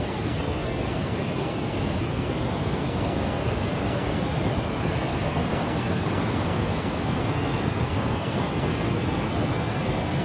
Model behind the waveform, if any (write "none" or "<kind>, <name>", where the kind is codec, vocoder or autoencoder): codec, SNAC